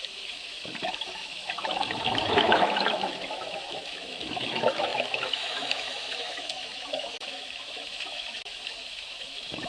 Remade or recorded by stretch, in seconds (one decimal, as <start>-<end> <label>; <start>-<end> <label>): 0.0-9.7 remade